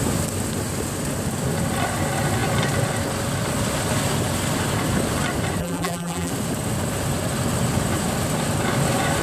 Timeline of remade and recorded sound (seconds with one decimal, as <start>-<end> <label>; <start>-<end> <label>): 0.0-5.6 recorded; 5.6-6.3 remade; 6.3-9.2 recorded